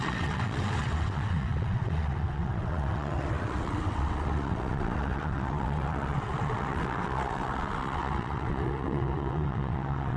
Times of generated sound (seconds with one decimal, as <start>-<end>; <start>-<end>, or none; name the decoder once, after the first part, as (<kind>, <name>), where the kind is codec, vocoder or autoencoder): 0.0-10.2 (vocoder, WaveNeXt)